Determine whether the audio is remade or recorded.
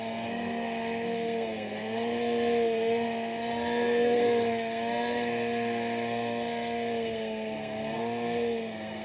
remade